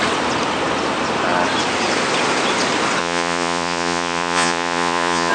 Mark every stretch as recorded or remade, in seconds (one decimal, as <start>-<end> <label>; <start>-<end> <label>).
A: 0.0-3.0 recorded; 3.0-5.3 remade